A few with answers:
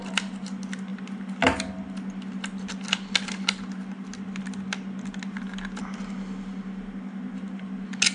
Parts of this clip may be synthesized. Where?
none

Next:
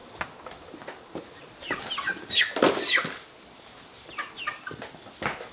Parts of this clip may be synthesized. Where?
none

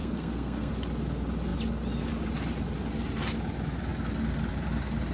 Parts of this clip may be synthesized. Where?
0.0-0.7 (codec, SNAC)

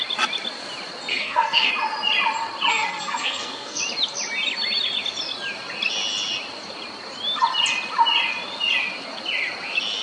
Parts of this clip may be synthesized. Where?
1.1-1.7 (codec, SNAC); 2.7-3.8

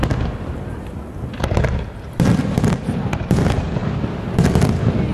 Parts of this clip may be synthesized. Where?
0.0-3.8 (vocoder, BigVGAN v2)

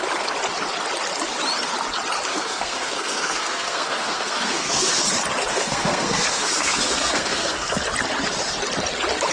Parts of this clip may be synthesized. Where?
2.3-5.0 (codec, SNAC); 5.5-7.8

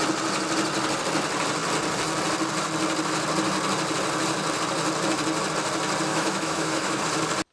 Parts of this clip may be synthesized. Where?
6.1-7.0 (autoencoder, DAC-VAE)